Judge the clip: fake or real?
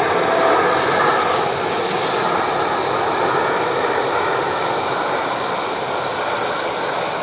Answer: real